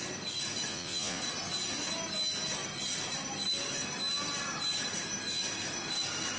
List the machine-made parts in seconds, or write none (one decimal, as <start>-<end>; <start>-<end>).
0.7-1.2